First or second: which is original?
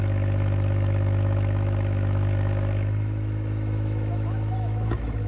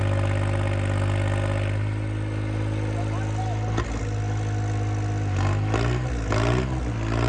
second